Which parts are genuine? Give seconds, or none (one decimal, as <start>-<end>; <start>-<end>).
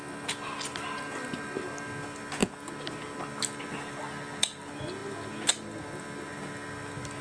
0.0-7.2